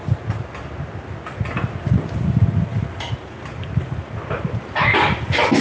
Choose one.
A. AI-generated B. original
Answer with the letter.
B